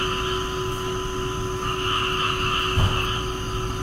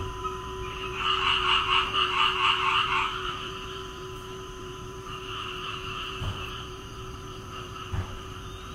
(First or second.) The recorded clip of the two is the first